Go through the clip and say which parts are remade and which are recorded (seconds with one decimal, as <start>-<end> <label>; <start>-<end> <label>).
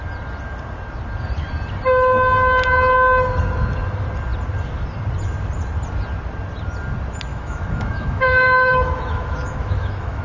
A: 0.0-7.3 recorded; 7.3-10.2 remade